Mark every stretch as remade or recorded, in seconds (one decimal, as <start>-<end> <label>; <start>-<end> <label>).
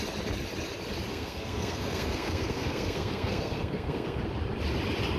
0.0-1.1 recorded; 1.1-4.2 remade; 4.2-5.2 recorded